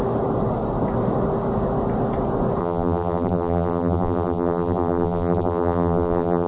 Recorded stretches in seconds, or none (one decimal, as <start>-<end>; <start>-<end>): 0.0-2.6